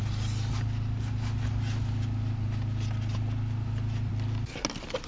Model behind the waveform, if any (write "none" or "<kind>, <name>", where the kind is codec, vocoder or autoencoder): none